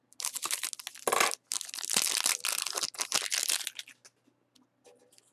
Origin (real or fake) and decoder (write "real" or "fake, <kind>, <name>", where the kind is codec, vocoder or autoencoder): real